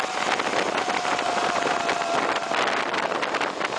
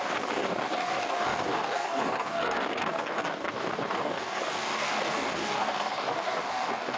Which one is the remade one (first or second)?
second